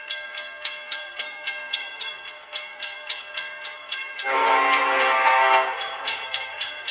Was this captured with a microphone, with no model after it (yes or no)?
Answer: no